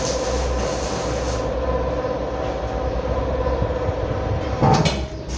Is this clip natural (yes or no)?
yes